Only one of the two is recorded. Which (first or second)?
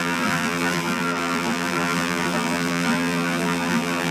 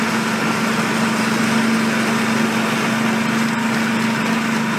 second